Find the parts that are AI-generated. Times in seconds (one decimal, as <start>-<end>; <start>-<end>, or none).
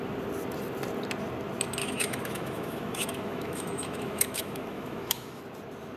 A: 1.8-5.4